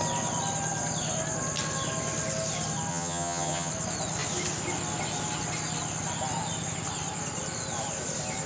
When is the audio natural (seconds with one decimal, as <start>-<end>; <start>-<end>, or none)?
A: 0.0-2.9; 3.7-8.5